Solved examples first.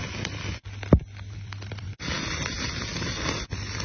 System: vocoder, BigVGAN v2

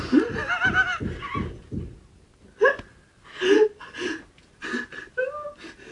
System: none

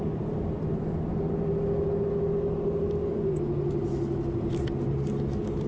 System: none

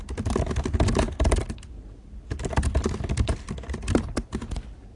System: none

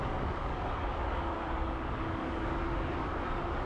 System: codec, DAC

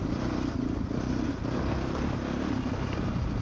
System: none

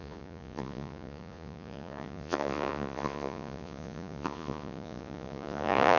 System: vocoder, Vocos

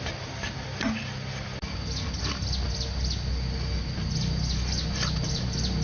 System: none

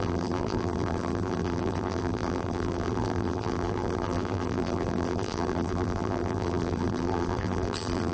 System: vocoder, BigVGAN v2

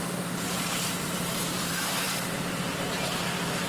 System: vocoder, BigVGAN v2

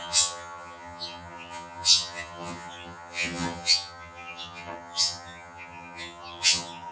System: vocoder, HiFi-GAN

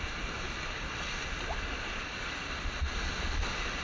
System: none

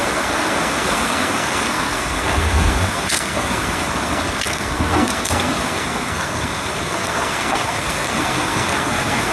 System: codec, SNAC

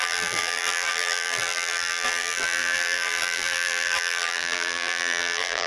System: vocoder, BigVGAN v2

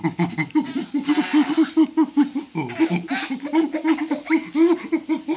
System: none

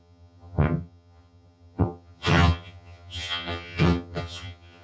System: vocoder, HiFi-GAN